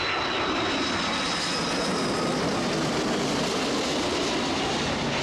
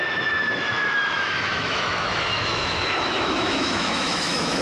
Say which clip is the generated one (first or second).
second